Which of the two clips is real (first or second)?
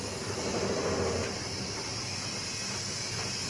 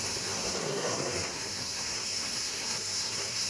first